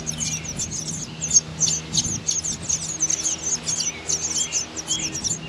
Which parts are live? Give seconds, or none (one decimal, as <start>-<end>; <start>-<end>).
0.0-5.5